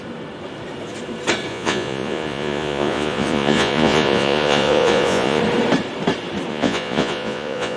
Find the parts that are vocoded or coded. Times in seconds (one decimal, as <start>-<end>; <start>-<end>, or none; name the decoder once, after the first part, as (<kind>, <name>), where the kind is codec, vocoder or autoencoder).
1.5-5.4 (vocoder, Vocos); 6.5-7.8